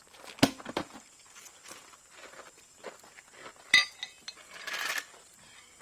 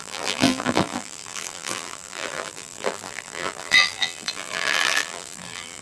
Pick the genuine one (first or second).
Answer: first